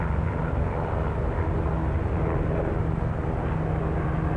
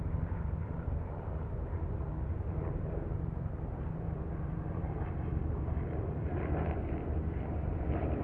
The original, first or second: first